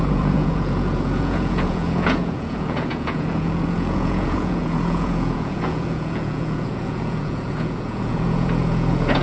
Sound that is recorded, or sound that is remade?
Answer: remade